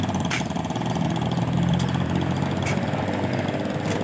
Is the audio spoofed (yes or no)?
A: no